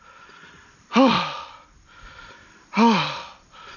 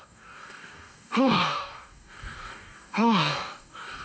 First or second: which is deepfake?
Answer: second